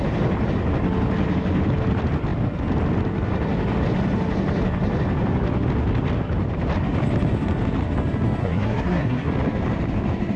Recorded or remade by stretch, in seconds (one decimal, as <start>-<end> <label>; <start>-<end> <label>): 0.0-8.4 recorded; 8.4-9.3 remade; 9.3-10.4 recorded